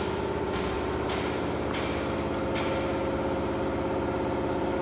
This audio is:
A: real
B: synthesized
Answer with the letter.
A